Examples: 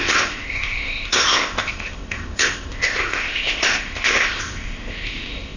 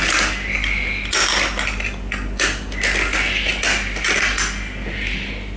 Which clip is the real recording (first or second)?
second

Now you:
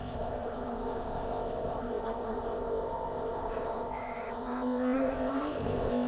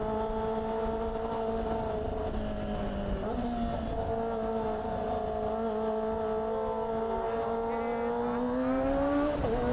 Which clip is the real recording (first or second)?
second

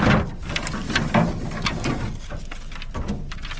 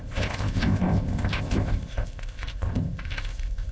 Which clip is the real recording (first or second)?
first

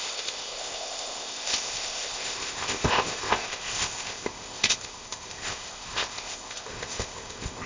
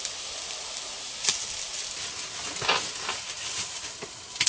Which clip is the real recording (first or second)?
second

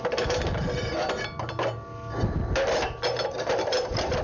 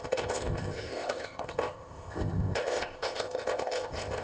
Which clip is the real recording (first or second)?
first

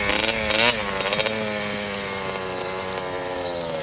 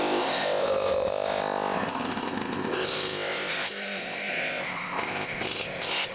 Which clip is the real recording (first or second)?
first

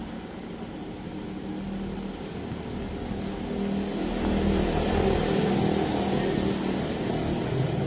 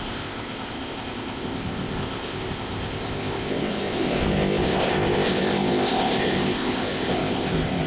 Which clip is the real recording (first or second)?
first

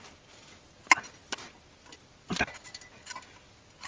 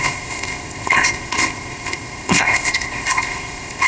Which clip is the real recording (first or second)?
first